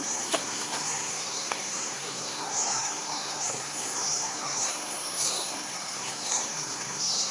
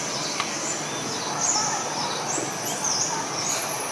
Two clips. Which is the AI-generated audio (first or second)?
first